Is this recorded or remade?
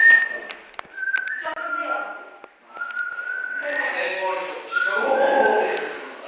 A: recorded